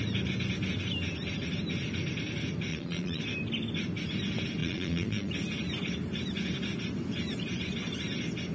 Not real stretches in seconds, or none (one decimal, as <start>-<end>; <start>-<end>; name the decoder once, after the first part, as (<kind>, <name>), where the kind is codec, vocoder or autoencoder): 2.7-3.2 (vocoder, Vocos); 4.6-5.3